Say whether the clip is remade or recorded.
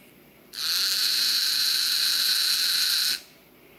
recorded